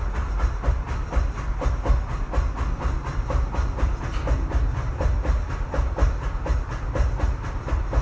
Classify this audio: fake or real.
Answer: real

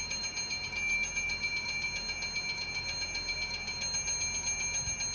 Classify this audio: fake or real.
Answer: real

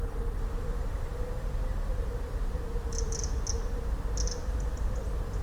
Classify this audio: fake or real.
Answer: real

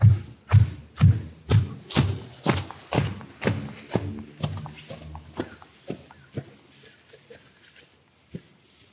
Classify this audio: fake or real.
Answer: real